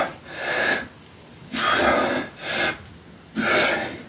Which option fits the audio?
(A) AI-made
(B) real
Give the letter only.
B